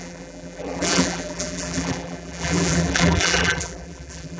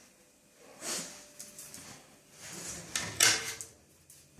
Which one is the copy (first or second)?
first